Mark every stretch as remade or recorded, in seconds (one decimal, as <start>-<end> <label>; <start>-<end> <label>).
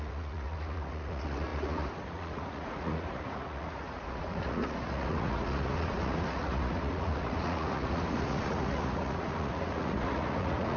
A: 0.0-10.8 remade